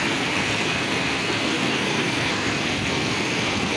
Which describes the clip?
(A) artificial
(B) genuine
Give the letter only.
A